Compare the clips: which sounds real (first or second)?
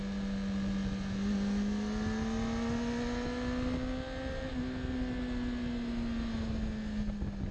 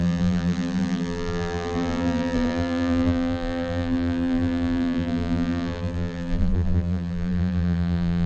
first